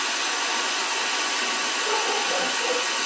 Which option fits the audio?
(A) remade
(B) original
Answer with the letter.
A